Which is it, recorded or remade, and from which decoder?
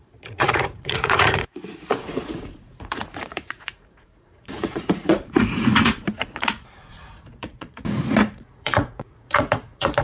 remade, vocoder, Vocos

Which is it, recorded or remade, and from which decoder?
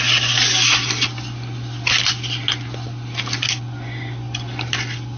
recorded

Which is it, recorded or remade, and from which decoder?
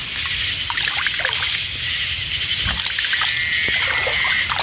recorded